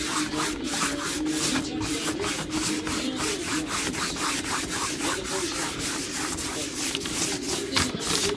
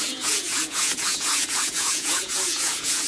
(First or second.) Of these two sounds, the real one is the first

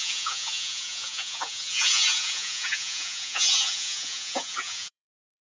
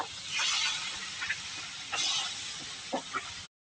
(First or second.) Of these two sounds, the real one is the second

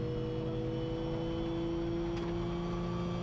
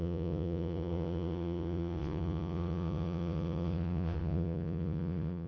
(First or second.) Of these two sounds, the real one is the first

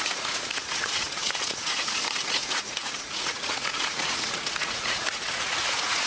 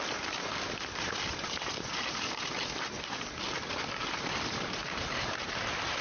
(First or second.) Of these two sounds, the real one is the second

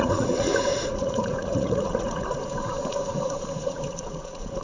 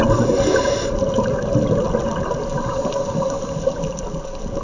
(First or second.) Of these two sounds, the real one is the second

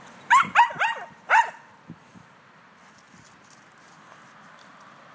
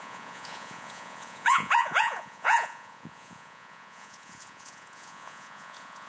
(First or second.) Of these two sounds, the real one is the first